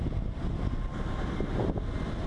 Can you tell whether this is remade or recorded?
recorded